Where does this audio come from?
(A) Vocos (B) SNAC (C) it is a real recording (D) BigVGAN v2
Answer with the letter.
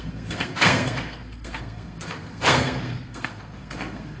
B